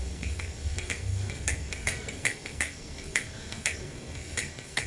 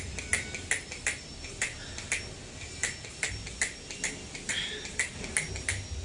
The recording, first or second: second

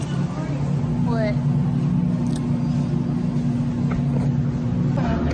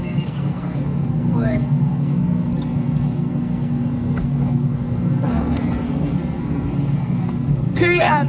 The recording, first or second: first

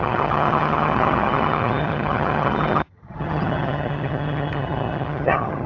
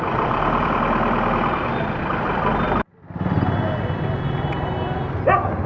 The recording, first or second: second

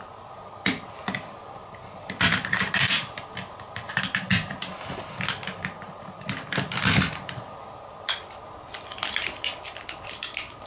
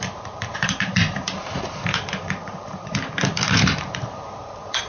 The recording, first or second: first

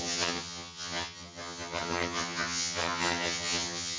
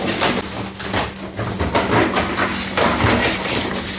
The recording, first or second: second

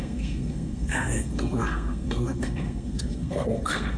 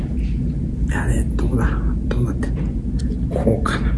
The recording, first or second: second